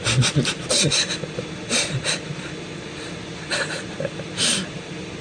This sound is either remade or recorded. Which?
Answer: recorded